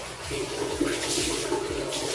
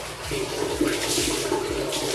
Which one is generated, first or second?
first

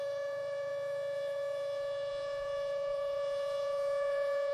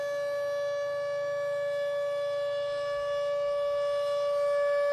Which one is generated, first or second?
first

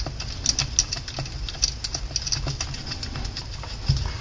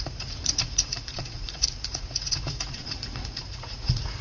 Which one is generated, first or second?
second